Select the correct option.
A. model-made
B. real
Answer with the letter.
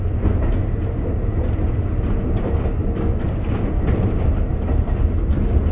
B